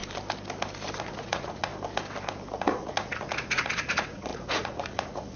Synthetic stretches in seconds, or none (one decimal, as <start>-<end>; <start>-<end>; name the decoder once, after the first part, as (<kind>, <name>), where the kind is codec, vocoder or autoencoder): 1.0-1.7 (vocoder, Vocos); 2.5-5.4